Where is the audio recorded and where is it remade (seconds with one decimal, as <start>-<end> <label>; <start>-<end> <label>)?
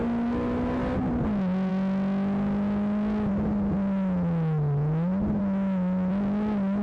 0.0-6.8 recorded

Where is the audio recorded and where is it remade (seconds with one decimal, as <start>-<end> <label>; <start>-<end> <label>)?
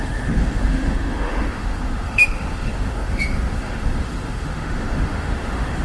0.0-5.8 remade